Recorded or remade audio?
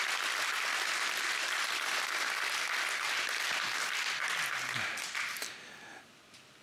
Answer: recorded